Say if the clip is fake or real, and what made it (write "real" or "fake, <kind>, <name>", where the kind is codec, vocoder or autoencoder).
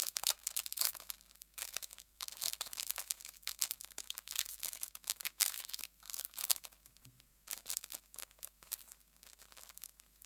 fake, codec, SNAC